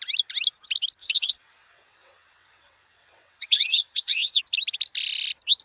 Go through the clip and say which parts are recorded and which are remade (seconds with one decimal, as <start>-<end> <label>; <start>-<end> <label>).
0.0-1.0 recorded; 1.0-4.4 remade; 4.4-5.6 recorded